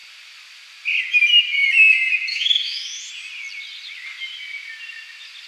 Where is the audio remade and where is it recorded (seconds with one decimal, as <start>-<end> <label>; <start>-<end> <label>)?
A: 0.0-2.3 recorded; 2.3-3.1 remade; 3.1-5.5 recorded

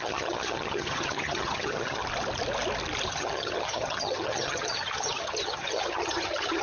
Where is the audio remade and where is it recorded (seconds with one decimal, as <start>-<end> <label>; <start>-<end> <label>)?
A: 0.0-2.0 remade; 2.0-3.1 recorded; 3.1-6.6 remade

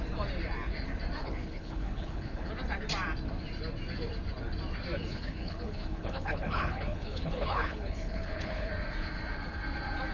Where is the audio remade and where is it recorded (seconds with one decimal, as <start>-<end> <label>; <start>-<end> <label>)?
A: 0.0-1.2 recorded; 1.2-2.5 remade; 2.5-5.0 recorded; 5.0-8.7 remade; 8.7-10.1 recorded

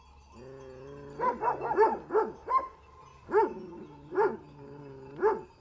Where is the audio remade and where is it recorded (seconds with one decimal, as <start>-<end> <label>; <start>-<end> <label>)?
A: 0.0-5.6 recorded

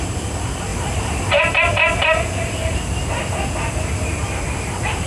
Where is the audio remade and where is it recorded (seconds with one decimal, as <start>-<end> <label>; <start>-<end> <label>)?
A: 0.0-5.1 recorded